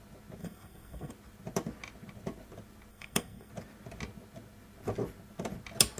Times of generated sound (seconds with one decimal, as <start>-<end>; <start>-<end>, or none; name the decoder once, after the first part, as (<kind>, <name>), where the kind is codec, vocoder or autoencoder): 0.4-1.1 (codec, SNAC); 2.9-3.5